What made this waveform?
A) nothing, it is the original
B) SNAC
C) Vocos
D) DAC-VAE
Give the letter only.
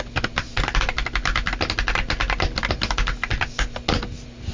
A